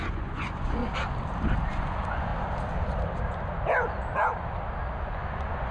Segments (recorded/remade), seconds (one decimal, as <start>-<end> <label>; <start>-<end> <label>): 0.0-0.8 remade; 0.8-1.7 recorded; 1.7-2.3 remade; 2.3-5.0 recorded; 5.0-5.7 remade